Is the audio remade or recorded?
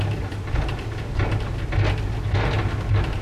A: recorded